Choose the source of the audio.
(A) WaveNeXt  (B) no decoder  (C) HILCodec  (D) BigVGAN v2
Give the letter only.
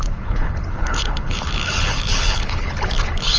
C